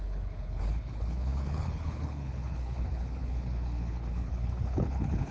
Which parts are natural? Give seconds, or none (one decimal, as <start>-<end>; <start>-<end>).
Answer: none